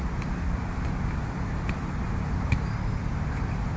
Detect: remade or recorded recorded